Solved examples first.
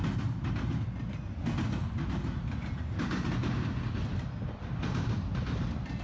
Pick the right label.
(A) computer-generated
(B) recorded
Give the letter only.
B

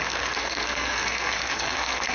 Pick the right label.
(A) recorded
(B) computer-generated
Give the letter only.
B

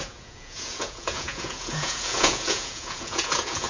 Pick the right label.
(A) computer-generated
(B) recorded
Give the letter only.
A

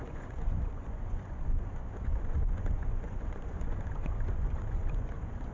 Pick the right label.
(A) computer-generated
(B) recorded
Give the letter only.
A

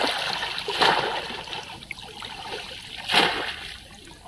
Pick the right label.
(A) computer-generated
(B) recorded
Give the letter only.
B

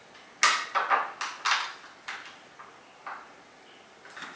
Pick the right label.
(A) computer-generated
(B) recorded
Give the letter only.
B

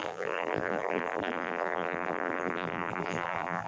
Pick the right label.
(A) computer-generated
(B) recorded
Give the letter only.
A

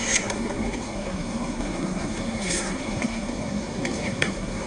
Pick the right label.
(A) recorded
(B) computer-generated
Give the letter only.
B